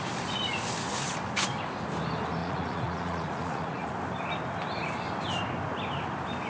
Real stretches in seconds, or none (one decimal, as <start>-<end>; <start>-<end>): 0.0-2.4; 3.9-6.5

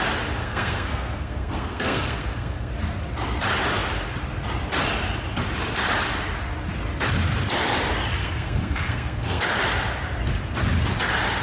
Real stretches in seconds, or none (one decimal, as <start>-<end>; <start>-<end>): 0.0-0.4; 2.7-8.2; 9.4-11.4

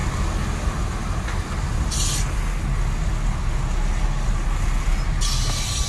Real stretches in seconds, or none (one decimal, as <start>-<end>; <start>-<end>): 0.0-5.9